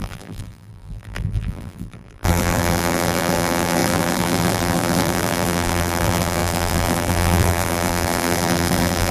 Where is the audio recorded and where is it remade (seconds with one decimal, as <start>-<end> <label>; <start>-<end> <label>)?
0.0-9.1 remade